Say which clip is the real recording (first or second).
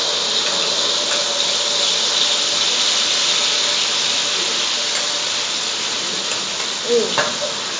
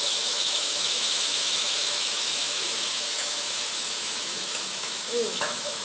first